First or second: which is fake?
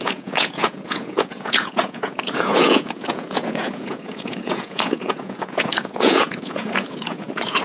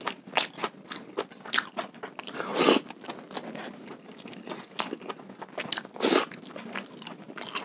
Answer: first